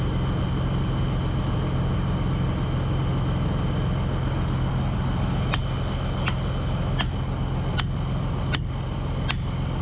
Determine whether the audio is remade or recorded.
recorded